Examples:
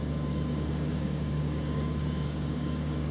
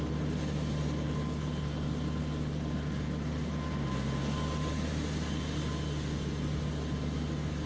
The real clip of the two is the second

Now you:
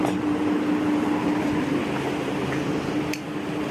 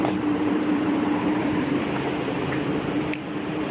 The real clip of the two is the first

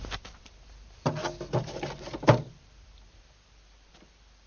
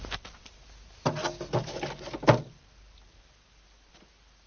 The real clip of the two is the second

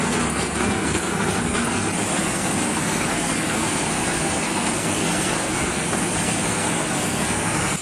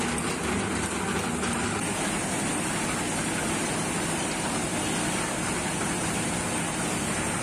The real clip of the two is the second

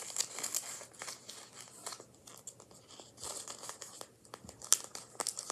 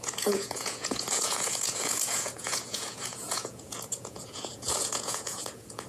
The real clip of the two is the first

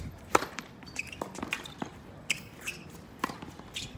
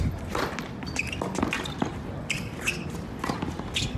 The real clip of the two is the second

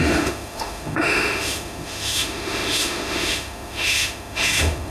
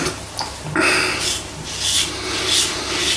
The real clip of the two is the second